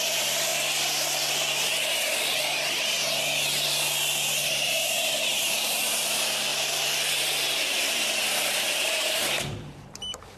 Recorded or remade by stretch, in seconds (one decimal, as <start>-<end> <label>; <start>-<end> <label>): 0.0-0.5 remade; 0.5-4.5 recorded; 4.5-6.5 remade; 6.5-7.6 recorded; 7.6-10.4 remade